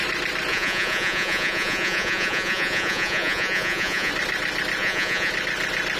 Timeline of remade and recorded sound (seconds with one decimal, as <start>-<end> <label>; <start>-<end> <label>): 0.0-0.5 recorded; 0.5-4.1 remade; 4.1-4.8 recorded; 4.8-5.3 remade; 5.3-6.0 recorded